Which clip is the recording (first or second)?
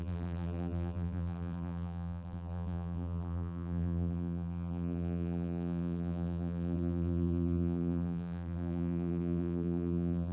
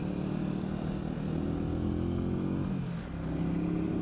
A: second